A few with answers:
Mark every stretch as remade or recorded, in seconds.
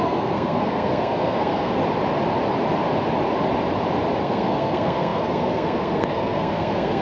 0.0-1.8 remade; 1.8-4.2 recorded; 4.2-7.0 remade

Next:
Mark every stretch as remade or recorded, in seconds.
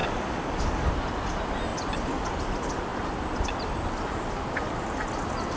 0.0-0.9 remade; 0.9-5.6 recorded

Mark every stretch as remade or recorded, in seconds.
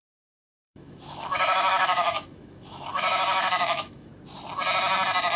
0.0-4.1 remade; 4.1-5.4 recorded